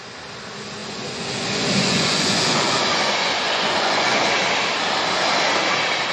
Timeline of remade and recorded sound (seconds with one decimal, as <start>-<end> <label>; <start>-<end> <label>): 0.0-0.8 recorded; 0.8-4.3 remade; 4.3-6.1 recorded